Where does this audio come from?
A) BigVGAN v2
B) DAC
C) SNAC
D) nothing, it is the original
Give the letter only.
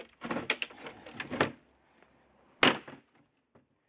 D